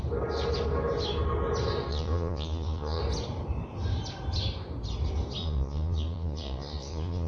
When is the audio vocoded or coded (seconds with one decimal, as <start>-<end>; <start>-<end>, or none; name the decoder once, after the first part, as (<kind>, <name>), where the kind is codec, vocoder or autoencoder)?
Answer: 1.9-3.0 (vocoder, Vocos); 5.4-7.3